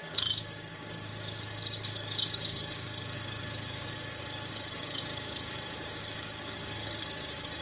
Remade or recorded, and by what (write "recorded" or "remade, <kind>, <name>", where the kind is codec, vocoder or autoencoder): remade, codec, DAC